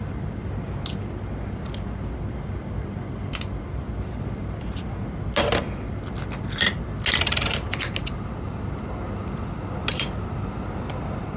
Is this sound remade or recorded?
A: recorded